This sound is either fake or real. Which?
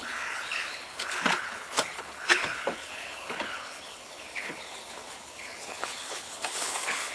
fake